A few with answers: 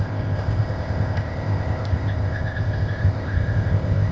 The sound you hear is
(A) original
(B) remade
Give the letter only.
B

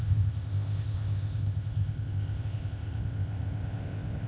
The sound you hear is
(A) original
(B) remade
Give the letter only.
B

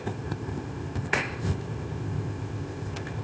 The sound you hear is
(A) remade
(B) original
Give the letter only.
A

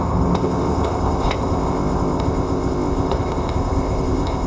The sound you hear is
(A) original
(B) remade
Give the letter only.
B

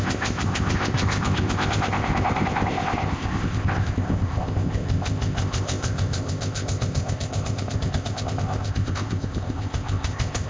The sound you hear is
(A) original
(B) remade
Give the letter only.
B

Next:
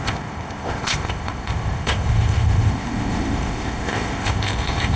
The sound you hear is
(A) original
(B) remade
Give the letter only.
B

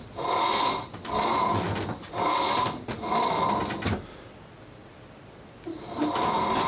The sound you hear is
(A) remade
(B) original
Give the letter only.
B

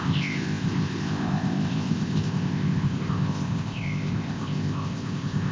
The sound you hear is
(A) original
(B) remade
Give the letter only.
B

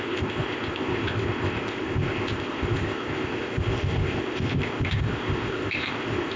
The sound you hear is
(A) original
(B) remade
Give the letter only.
B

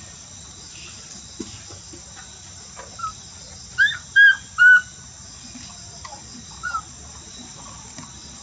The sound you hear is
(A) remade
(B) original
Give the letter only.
B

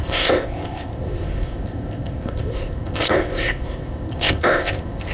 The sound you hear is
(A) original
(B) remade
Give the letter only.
B